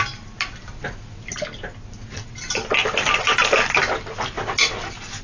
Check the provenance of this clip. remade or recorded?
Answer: recorded